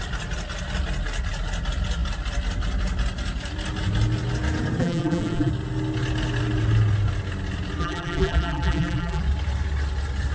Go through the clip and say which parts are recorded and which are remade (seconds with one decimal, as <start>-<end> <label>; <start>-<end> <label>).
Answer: 0.0-4.8 recorded; 4.8-5.5 remade; 5.5-7.8 recorded; 7.8-9.2 remade; 9.2-10.3 recorded